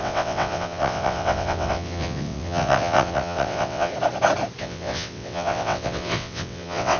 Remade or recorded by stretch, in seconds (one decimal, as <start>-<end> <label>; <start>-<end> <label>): 0.0-3.9 remade; 3.9-4.6 recorded; 4.6-7.0 remade